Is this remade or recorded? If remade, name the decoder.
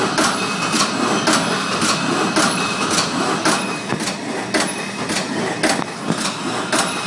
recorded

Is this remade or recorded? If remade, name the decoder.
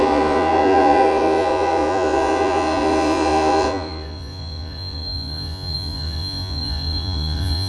remade, vocoder, Vocos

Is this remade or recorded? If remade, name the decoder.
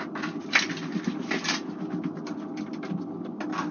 recorded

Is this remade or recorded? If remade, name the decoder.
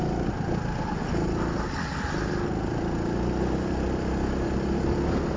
recorded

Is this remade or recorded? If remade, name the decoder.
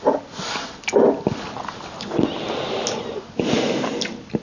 recorded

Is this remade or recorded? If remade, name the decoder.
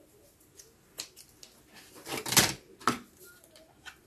recorded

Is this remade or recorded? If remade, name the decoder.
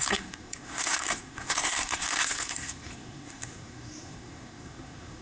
remade, codec, SNAC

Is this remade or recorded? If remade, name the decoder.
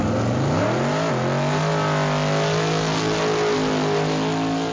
recorded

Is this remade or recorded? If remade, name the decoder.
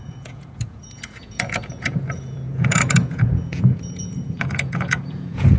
remade, vocoder, Vocos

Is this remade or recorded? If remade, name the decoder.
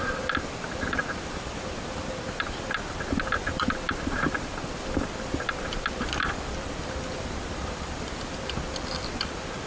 remade, vocoder, BigVGAN v2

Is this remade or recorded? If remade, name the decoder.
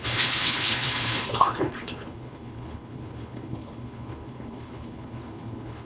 remade, codec, HILCodec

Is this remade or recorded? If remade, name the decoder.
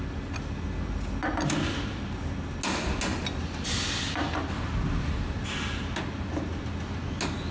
recorded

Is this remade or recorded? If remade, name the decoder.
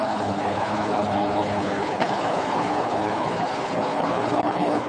remade, codec, HILCodec